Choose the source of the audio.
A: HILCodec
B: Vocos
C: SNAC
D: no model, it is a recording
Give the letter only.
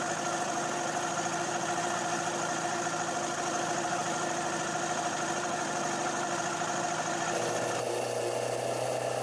D